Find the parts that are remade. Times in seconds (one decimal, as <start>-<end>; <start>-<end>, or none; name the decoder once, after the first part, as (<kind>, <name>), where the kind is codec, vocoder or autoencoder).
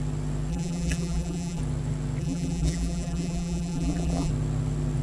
0.5-1.6 (vocoder, BigVGAN v2); 2.2-4.3